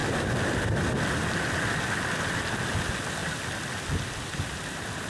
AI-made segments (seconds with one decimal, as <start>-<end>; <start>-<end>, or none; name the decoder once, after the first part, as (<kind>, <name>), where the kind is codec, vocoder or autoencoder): none